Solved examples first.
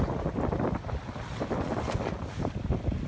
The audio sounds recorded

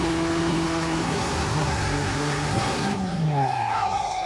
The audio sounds remade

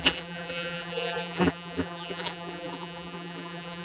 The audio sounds remade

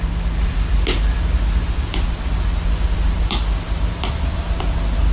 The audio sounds remade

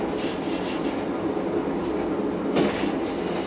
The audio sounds recorded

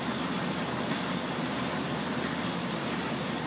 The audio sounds recorded